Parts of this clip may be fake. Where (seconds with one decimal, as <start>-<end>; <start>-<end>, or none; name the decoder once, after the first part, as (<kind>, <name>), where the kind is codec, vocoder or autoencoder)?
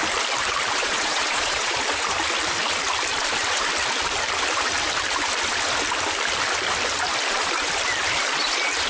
0.8-1.7 (vocoder, Vocos)